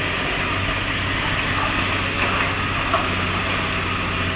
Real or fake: real